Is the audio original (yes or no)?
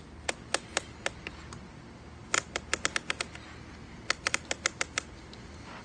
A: yes